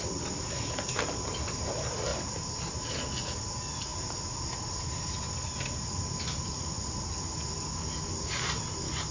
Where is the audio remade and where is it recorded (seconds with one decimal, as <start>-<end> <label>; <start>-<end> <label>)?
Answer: 0.0-9.1 recorded

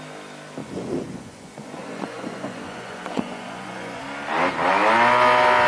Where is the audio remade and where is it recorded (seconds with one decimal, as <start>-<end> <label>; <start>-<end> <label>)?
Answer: 0.0-0.6 recorded; 0.6-4.0 remade; 4.0-5.7 recorded